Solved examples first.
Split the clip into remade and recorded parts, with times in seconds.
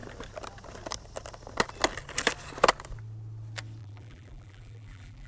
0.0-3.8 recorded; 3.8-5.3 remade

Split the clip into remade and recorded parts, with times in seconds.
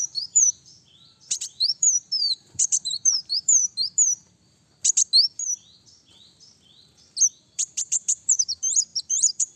0.0-3.6 remade; 3.6-7.4 recorded; 7.4-9.6 remade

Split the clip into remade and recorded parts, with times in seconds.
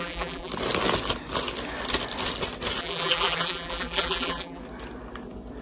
0.0-0.5 remade; 0.5-2.8 recorded; 2.8-4.6 remade; 4.6-5.6 recorded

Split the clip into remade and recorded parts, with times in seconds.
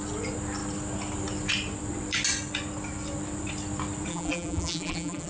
0.0-4.1 recorded; 4.1-5.3 remade